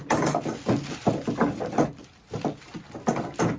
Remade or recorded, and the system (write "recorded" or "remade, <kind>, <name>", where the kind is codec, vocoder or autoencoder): recorded